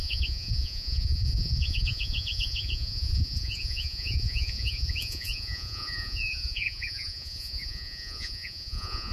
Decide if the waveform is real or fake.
fake